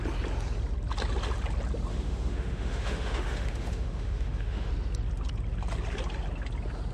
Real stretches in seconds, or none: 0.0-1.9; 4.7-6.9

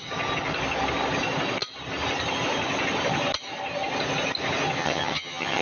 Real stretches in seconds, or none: 0.0-4.8

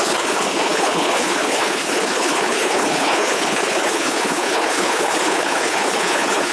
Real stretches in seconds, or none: none

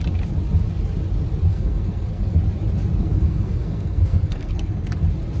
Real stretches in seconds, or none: 0.0-1.5; 2.4-3.0; 4.9-5.4

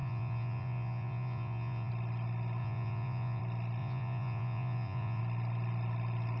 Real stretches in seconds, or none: 1.9-2.6; 3.4-3.8; 5.2-6.4